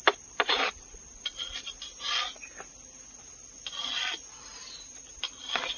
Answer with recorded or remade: recorded